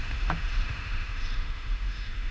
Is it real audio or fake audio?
fake